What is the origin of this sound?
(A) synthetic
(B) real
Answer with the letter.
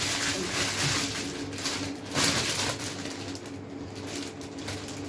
B